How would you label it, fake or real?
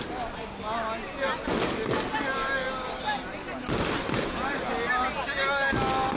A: real